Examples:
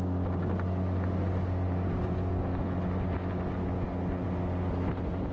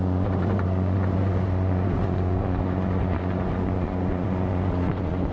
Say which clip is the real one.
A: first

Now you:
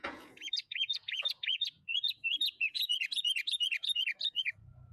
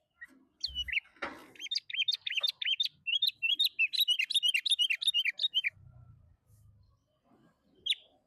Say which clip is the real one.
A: second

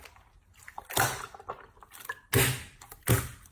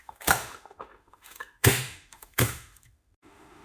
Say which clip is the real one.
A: first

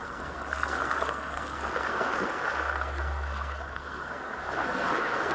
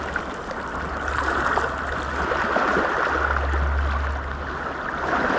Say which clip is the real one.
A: second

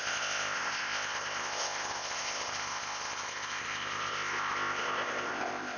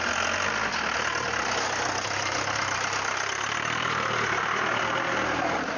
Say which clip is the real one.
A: second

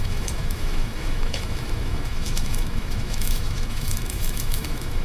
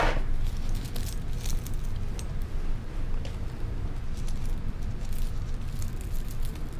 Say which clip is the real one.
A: second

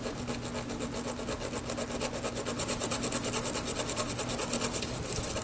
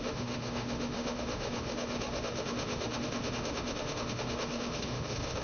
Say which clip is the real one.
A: first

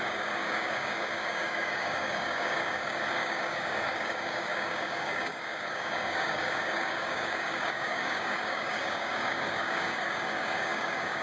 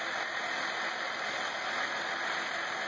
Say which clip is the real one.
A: second